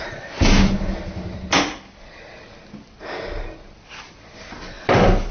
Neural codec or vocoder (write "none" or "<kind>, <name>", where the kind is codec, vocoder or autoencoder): none